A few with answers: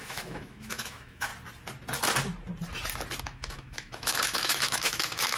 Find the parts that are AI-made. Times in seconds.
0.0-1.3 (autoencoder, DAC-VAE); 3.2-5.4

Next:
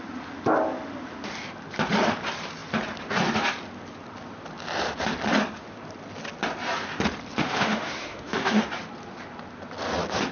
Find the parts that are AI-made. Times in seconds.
7.4-8.6 (autoencoder, DAC-VAE)